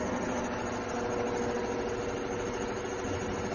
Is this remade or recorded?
recorded